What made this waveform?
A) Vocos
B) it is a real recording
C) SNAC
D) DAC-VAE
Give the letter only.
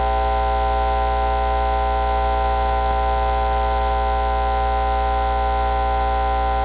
B